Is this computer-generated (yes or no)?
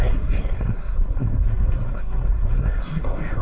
yes